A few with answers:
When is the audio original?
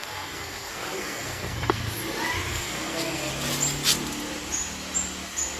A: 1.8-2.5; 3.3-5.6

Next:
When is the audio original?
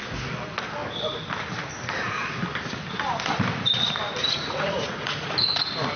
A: 0.0-4.2; 5.3-6.0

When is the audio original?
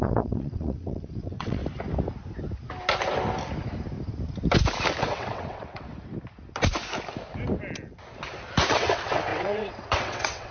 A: 1.6-5.0; 5.9-8.7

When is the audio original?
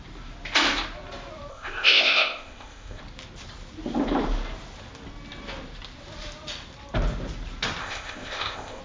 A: 0.0-1.5; 3.0-7.8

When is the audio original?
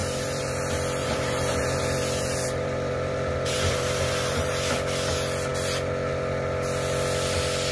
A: 0.6-1.0; 4.5-7.7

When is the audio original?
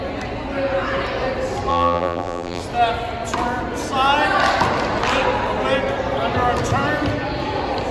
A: 0.0-1.7; 2.6-7.9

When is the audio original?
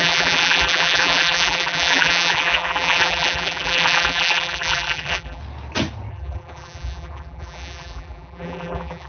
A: 5.4-6.1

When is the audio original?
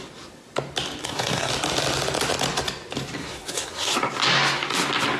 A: 0.0-1.0; 1.5-3.2; 3.9-5.2